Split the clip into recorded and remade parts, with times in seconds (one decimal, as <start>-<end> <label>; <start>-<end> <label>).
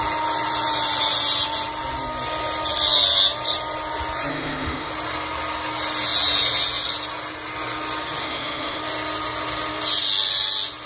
0.0-4.3 recorded; 4.3-4.9 remade; 4.9-8.2 recorded; 8.2-8.8 remade; 8.8-10.9 recorded